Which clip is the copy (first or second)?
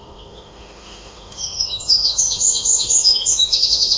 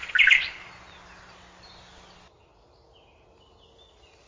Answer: first